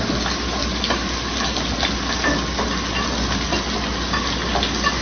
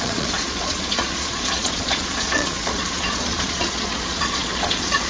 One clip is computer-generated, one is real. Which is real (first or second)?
first